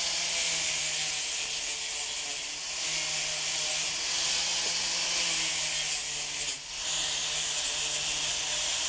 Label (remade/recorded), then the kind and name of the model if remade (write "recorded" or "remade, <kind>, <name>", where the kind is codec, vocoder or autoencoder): recorded